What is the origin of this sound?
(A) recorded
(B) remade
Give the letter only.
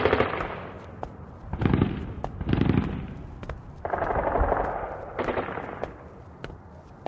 A